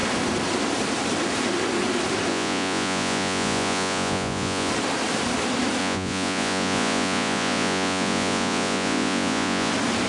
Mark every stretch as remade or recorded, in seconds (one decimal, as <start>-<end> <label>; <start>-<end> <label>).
0.0-2.3 recorded; 2.3-4.7 remade; 4.7-5.8 recorded; 5.8-9.7 remade; 9.7-10.1 recorded